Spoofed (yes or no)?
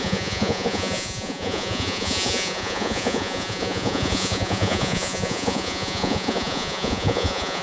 yes